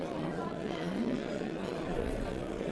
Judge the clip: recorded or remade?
remade